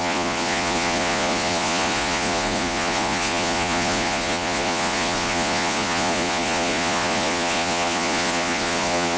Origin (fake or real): fake